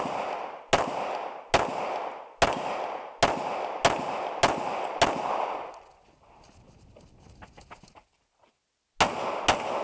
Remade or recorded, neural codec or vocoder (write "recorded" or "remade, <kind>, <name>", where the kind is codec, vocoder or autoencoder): recorded